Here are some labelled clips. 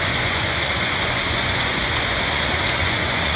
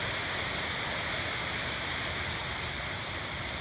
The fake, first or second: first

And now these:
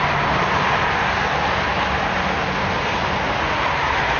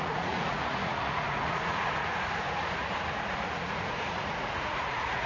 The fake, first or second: second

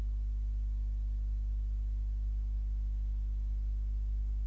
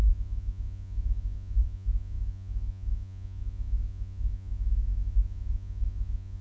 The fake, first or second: second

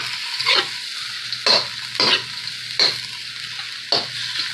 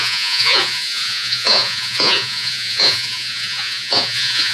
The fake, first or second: second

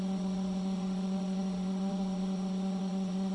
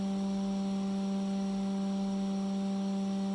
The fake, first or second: first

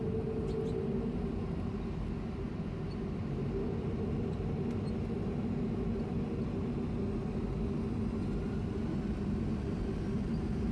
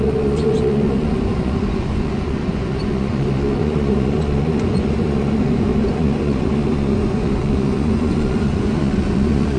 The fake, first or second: second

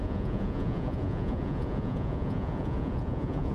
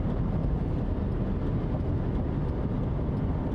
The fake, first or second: first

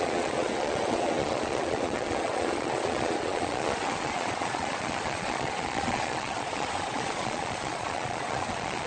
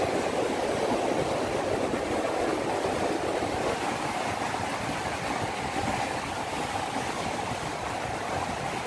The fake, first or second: first